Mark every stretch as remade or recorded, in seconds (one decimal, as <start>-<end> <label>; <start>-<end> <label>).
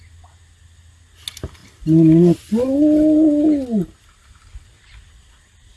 0.0-5.8 recorded